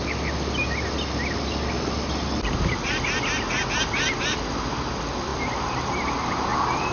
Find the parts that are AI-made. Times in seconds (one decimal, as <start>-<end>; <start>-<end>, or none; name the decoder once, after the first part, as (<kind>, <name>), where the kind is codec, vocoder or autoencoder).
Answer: none